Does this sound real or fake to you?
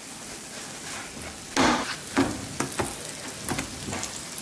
real